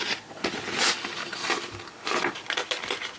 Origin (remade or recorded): recorded